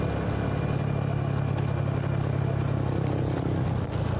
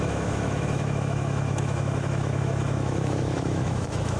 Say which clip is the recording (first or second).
first